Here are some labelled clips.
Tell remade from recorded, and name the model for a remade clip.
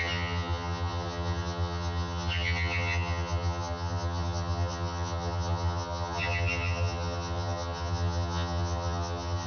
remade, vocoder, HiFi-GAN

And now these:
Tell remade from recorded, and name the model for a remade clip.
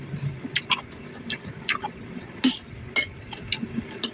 recorded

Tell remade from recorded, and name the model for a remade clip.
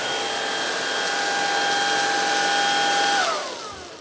recorded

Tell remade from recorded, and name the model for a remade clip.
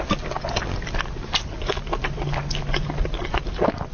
recorded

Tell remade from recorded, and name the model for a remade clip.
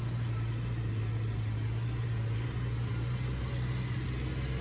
recorded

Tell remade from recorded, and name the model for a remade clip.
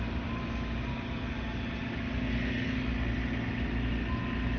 recorded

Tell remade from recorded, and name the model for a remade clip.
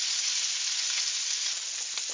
recorded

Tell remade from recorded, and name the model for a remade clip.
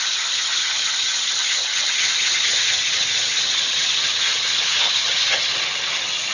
remade, vocoder, HiFi-GAN